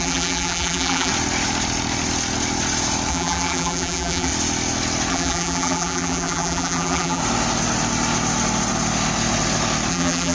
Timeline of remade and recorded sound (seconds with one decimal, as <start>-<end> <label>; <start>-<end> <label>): 0.0-1.1 remade; 1.1-3.1 recorded; 3.1-4.3 remade; 4.3-5.1 recorded; 5.1-7.2 remade; 7.2-9.9 recorded; 9.9-10.3 remade